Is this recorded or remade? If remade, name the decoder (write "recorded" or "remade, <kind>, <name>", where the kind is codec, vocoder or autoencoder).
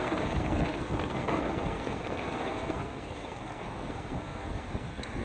remade, codec, SNAC